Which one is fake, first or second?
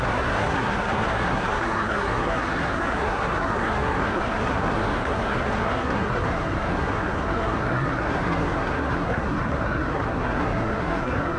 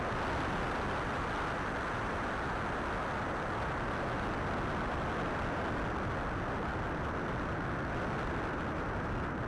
first